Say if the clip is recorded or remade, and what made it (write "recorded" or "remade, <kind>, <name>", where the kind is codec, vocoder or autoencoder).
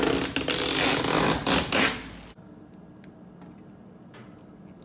recorded